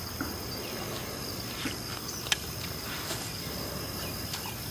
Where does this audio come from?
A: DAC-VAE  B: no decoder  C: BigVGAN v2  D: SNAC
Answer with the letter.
B